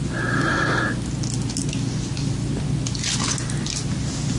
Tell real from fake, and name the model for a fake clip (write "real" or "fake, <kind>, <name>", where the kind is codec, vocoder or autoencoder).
real